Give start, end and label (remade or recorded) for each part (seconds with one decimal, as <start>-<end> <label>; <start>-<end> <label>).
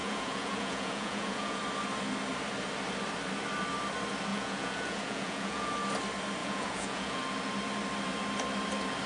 0.0-1.6 remade; 1.6-4.3 recorded; 4.3-5.7 remade; 5.7-6.4 recorded; 6.4-7.2 remade; 7.2-9.1 recorded